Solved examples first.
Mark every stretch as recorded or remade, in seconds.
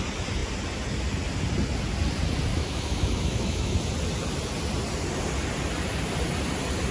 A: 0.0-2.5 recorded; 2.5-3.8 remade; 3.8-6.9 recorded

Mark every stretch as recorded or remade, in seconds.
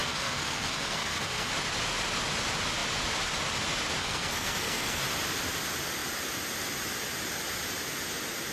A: 0.0-1.5 remade; 1.5-4.0 recorded; 4.0-5.0 remade; 5.0-8.5 recorded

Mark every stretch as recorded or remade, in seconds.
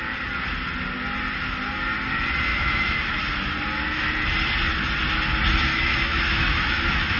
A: 0.0-2.5 recorded; 2.5-3.2 remade; 3.2-5.7 recorded; 5.7-7.2 remade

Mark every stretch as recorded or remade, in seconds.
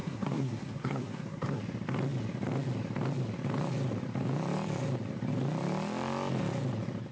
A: 0.0-1.6 remade; 1.6-7.1 recorded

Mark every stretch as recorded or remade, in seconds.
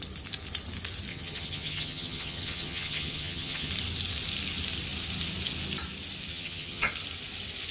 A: 0.0-1.1 recorded; 1.1-3.7 remade; 3.7-6.3 recorded; 6.3-6.9 remade; 6.9-7.7 recorded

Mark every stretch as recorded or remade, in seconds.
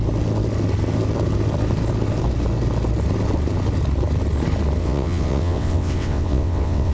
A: 0.0-4.8 recorded; 4.8-6.9 remade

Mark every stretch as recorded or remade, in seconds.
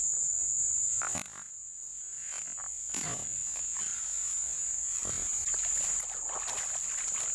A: 0.0-7.3 recorded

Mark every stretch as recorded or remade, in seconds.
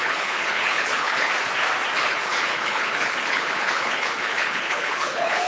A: 0.0-1.3 remade; 1.3-2.0 recorded; 2.0-5.5 remade